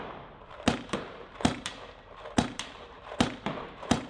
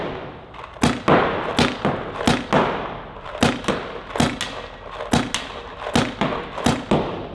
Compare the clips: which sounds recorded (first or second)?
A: second